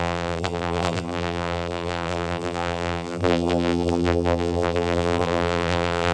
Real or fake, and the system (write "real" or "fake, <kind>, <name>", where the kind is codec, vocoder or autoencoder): fake, vocoder, BigVGAN v2